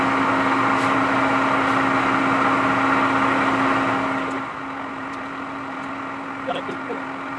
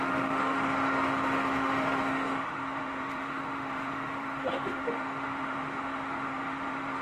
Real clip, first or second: first